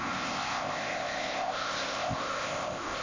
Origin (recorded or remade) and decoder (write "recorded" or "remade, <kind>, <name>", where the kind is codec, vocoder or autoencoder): remade, codec, ZipCodec